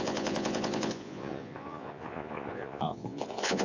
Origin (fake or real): fake